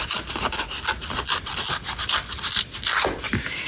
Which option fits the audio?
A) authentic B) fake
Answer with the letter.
A